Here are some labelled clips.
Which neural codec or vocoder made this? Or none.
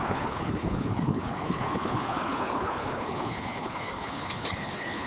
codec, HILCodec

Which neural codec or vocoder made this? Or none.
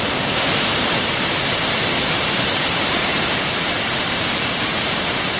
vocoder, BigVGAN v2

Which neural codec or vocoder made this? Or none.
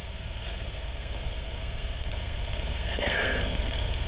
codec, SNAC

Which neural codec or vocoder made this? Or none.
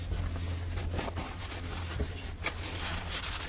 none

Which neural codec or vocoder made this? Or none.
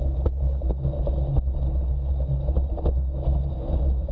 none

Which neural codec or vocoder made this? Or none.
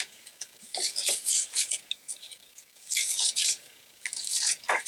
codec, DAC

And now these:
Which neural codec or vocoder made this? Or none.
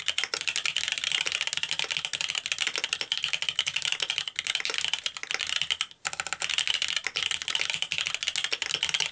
none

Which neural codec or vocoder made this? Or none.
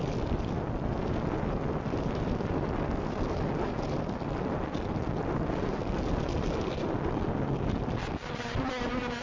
none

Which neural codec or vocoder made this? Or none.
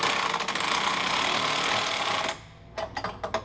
none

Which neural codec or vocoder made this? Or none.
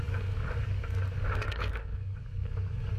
codec, DAC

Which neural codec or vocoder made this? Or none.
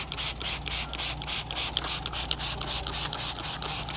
none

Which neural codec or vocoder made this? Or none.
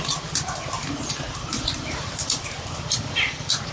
vocoder, BigVGAN v2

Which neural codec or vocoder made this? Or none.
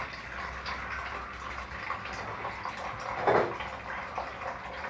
none